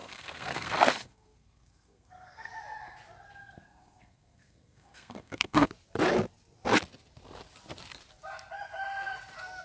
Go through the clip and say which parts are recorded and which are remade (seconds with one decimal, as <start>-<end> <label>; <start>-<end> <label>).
0.0-2.5 remade; 2.5-3.4 recorded; 3.4-5.7 remade; 5.7-9.6 recorded